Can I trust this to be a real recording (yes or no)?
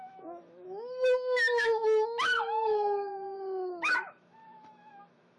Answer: no